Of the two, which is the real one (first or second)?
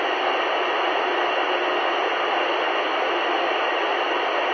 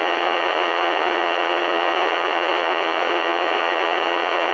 first